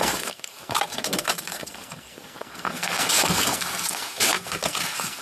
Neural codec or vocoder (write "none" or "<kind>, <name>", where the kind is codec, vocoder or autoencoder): codec, SNAC